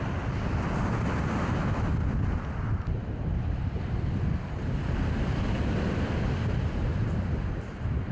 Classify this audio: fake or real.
real